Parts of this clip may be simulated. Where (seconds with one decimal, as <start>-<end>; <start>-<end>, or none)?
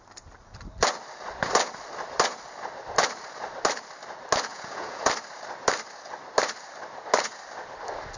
4.5-5.1